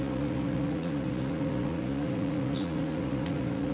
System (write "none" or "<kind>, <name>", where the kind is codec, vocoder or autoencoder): vocoder, Vocos